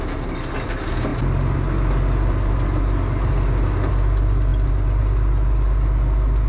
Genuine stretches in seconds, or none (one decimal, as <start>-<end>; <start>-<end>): 0.0-6.5